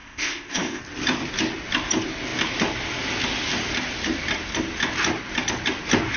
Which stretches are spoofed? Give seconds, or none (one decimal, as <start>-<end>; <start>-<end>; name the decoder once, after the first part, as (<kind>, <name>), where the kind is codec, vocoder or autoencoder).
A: 0.0-0.8 (codec, ZipCodec)